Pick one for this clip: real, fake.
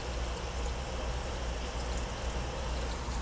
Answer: real